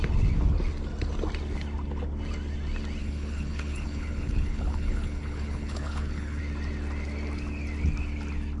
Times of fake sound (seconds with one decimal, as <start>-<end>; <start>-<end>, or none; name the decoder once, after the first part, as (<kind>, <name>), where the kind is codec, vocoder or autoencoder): 3.0-6.4 (codec, HILCodec)